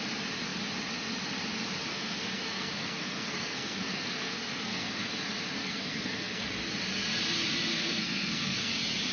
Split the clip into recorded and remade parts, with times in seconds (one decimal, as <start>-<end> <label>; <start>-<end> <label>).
0.0-1.9 recorded; 1.9-5.1 remade; 5.1-5.6 recorded; 5.6-6.5 remade; 6.5-7.7 recorded; 7.7-8.7 remade; 8.7-9.1 recorded